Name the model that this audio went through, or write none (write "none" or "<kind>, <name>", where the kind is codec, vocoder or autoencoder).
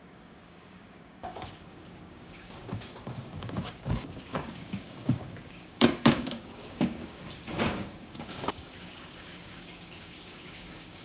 codec, DAC